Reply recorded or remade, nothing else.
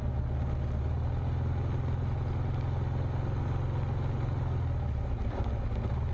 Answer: recorded